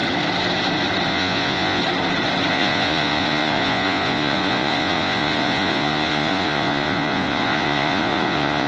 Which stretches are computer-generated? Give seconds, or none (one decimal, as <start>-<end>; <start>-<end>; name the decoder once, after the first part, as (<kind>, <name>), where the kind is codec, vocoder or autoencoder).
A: 1.1-1.8 (vocoder, Vocos); 2.5-8.7